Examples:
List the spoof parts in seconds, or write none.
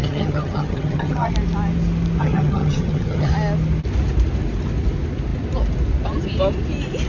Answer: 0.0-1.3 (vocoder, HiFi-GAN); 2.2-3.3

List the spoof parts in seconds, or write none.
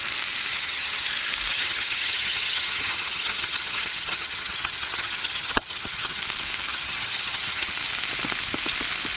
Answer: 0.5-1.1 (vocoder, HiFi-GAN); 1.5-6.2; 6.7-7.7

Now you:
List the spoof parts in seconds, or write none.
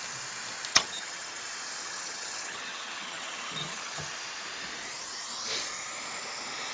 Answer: 0.7-1.4 (vocoder, HiFi-GAN); 1.8-4.1